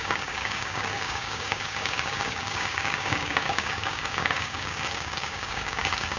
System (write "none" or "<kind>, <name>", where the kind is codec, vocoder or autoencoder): codec, DAC